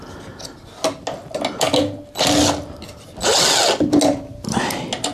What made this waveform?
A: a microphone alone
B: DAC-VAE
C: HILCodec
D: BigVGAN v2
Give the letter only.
A